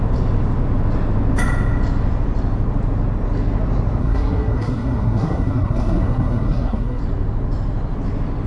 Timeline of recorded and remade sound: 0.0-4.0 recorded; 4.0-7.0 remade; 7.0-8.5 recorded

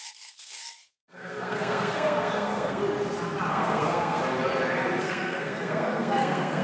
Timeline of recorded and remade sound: 0.0-2.8 remade; 2.8-3.5 recorded; 3.5-4.2 remade; 4.2-5.0 recorded; 5.0-6.6 remade

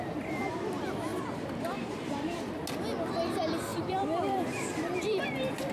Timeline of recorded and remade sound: 0.0-1.1 recorded; 1.1-2.5 remade; 2.5-3.7 recorded; 3.7-5.2 remade; 5.2-5.7 recorded

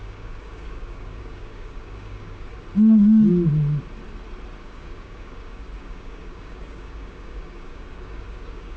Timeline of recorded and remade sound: 0.0-2.5 remade; 2.5-4.6 recorded; 4.6-8.8 remade

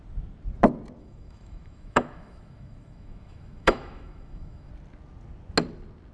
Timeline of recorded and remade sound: 0.0-1.0 recorded; 1.0-4.7 remade; 4.7-6.1 recorded

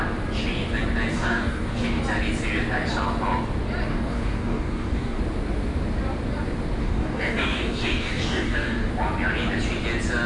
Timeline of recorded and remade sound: 0.0-1.1 recorded; 1.1-2.0 remade; 2.0-3.9 recorded; 3.9-5.2 remade; 5.2-6.8 recorded; 6.8-8.9 remade; 8.9-10.3 recorded